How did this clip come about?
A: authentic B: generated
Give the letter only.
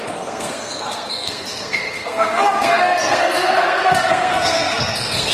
B